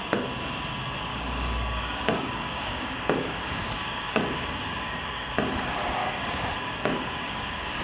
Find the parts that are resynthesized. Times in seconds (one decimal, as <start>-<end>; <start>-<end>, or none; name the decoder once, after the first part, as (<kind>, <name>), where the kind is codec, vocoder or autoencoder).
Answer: 1.1-5.3 (codec, DAC); 6.0-7.8